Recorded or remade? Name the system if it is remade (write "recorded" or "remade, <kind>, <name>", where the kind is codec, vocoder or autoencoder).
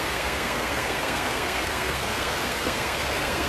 remade, codec, SNAC